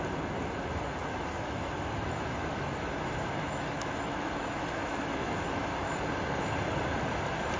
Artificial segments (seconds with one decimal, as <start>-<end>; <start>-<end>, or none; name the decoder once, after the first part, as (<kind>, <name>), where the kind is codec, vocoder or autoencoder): 1.1-5.7 (autoencoder, DAC-VAE)